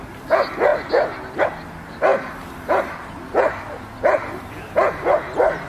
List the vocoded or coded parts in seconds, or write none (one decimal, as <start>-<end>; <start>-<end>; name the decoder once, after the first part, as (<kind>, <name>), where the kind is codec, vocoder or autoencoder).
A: 2.1-5.7 (vocoder, BigVGAN v2)